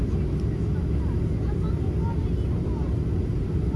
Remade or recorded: recorded